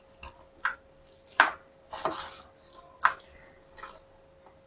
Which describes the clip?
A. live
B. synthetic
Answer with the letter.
A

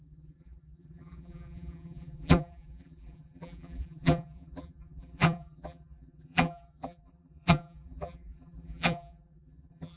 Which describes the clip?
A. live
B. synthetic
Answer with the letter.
B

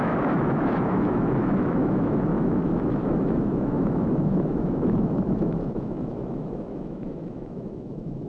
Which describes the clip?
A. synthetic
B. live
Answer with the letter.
A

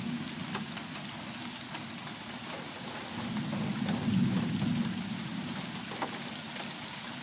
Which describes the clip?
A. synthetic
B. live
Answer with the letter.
B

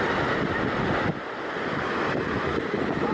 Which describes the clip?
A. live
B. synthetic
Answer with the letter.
A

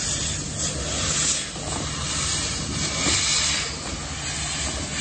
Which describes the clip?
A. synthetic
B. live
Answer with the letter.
B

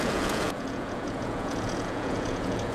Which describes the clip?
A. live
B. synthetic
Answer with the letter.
B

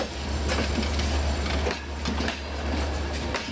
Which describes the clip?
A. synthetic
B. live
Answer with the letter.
B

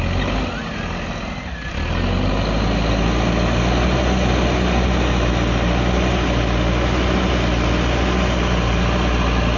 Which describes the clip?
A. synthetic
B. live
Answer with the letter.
B